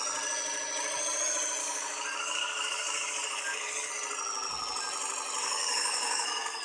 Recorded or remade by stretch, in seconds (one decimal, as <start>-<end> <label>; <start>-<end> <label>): 0.0-1.6 recorded; 1.6-3.9 remade; 3.9-5.4 recorded; 5.4-6.6 remade